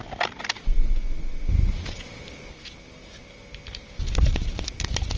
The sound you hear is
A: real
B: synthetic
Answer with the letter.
A